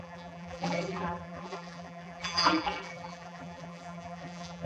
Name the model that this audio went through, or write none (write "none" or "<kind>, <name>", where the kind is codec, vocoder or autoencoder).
vocoder, BigVGAN v2